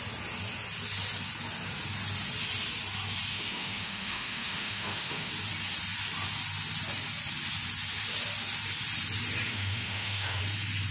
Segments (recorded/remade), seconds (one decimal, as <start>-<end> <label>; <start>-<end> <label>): 0.0-3.3 recorded; 3.3-5.3 remade; 5.3-9.5 recorded; 9.5-10.4 remade; 10.4-10.9 recorded